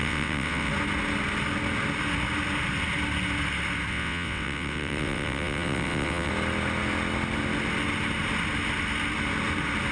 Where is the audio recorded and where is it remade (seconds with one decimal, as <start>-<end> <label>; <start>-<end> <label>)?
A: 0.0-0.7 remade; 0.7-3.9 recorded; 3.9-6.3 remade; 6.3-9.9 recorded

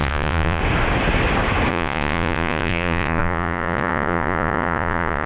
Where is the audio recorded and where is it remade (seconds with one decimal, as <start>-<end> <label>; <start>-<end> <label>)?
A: 0.0-0.6 remade; 0.6-1.7 recorded; 1.7-5.3 remade

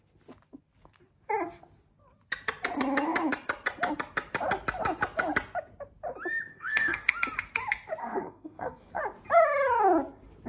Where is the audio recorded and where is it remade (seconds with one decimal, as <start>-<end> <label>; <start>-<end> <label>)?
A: 0.0-6.5 recorded; 6.5-7.1 remade; 7.1-8.0 recorded; 8.0-9.0 remade; 9.0-10.5 recorded